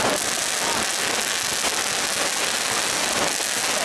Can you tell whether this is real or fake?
real